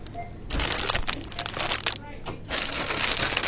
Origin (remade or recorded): recorded